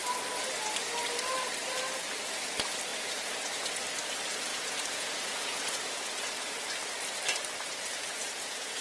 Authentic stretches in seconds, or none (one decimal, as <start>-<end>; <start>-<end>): 0.0-2.9; 3.8-4.5; 6.6-7.7